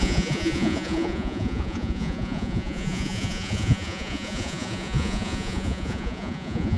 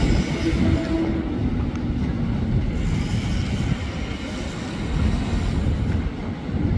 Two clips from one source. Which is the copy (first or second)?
first